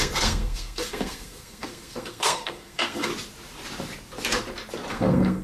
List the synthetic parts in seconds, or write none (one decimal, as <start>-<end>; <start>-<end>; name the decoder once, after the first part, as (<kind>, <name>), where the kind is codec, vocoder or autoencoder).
0.0-3.1 (codec, SNAC); 4.9-5.4